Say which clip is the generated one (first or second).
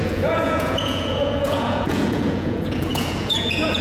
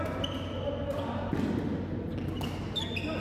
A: first